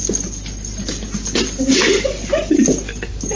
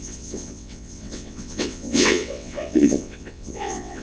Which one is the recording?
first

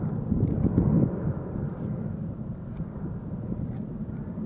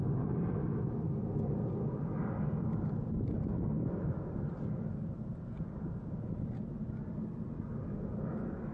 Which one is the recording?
second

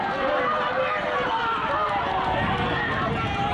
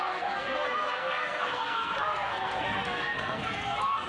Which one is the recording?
first